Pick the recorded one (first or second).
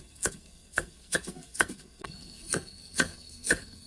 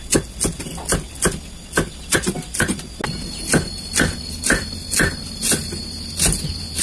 second